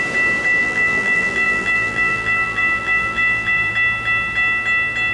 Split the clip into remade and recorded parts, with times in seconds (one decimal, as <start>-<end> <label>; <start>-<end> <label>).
0.0-0.6 recorded; 0.6-3.7 remade; 3.7-5.1 recorded